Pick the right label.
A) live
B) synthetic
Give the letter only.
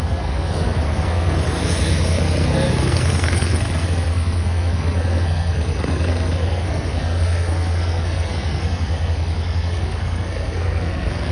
B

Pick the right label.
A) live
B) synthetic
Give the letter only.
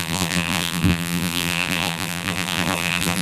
B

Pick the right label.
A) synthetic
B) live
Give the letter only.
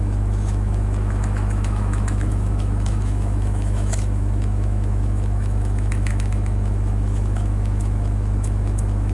A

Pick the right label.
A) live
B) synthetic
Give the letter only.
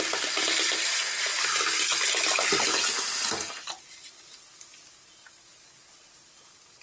A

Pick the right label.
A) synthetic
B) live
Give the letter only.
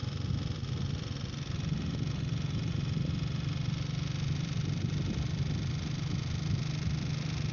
B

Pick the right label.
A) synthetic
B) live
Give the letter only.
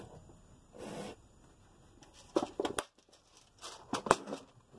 B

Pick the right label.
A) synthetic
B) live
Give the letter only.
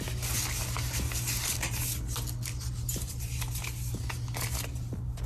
B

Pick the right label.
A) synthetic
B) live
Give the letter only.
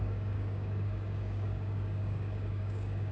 A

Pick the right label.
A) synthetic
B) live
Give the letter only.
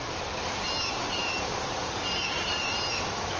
B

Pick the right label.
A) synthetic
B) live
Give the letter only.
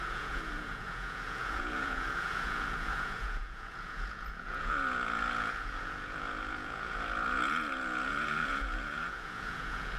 A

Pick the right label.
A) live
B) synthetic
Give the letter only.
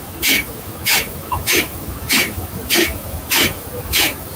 B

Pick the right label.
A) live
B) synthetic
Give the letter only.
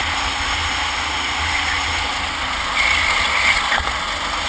A